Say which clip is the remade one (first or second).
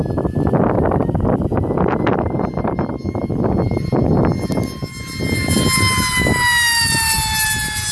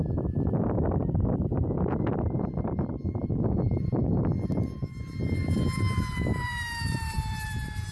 second